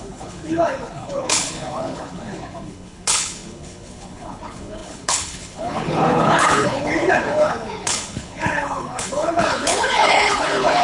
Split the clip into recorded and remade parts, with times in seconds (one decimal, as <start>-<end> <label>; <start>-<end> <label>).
0.0-10.8 remade